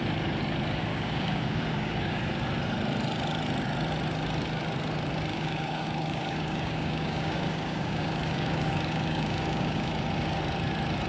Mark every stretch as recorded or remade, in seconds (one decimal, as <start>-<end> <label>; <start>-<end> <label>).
0.0-0.9 recorded; 0.9-2.2 remade; 2.2-5.3 recorded; 5.3-9.9 remade; 9.9-11.1 recorded